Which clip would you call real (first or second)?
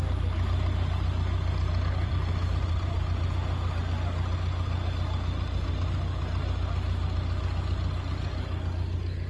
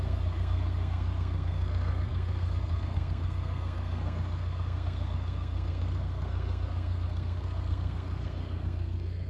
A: first